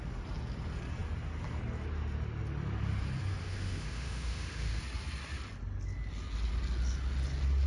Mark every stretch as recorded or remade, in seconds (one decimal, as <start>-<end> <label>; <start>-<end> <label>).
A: 0.0-3.4 recorded; 3.4-4.8 remade; 4.8-7.7 recorded